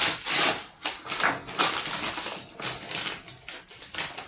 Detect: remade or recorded recorded